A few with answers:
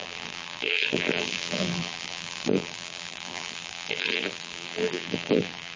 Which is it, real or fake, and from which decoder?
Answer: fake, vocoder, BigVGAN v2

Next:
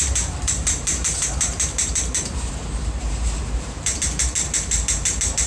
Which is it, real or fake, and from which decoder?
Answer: fake, vocoder, BigVGAN v2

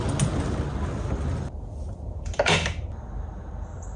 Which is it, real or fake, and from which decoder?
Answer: real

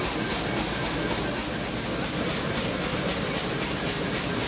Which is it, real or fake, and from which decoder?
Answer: real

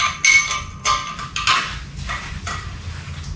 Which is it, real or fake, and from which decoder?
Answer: real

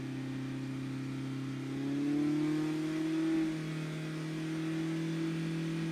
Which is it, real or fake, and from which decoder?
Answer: real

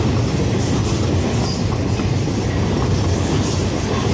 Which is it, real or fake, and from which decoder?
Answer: real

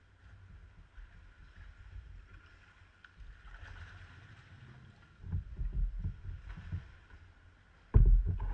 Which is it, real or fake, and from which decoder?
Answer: real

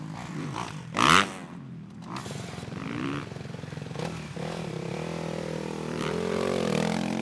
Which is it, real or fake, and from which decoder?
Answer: fake, vocoder, BigVGAN v2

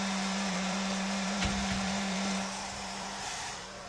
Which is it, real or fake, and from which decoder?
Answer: fake, vocoder, BigVGAN v2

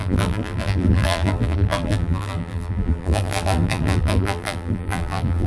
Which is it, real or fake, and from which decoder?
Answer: fake, vocoder, BigVGAN v2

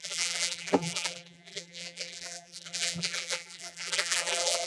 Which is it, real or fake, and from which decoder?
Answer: fake, vocoder, BigVGAN v2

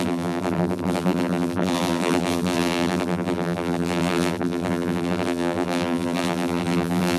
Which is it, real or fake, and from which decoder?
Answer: fake, vocoder, BigVGAN v2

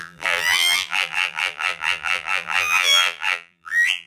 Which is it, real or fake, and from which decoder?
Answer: fake, vocoder, BigVGAN v2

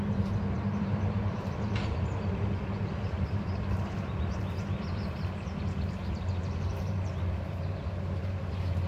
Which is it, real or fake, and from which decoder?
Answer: fake, vocoder, BigVGAN v2